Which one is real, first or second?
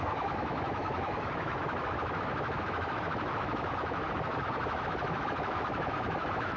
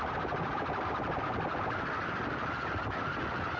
second